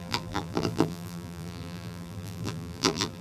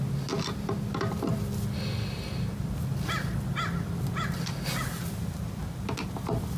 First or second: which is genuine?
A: second